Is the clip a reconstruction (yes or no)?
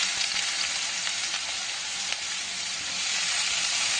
yes